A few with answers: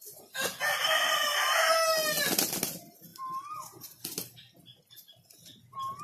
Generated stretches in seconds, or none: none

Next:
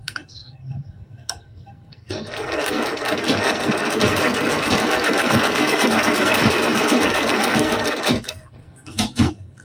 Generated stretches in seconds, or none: 0.0-9.6 (codec, SNAC)

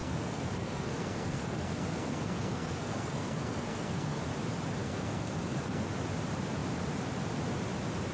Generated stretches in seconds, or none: 0.0-4.2 (codec, SNAC); 4.8-5.9

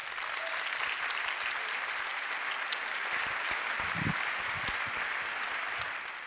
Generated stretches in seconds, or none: none

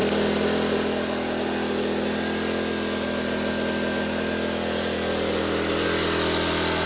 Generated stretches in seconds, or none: none

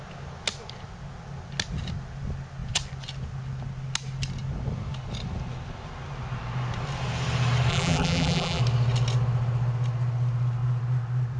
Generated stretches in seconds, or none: 7.7-8.6 (vocoder, BigVGAN v2)

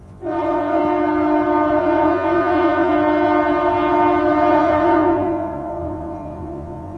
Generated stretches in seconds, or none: 0.0-0.8 (vocoder, Vocos); 1.8-2.9; 4.5-7.0